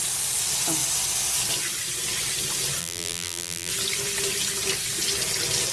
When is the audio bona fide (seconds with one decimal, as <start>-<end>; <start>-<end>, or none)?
0.0-2.8; 3.7-5.7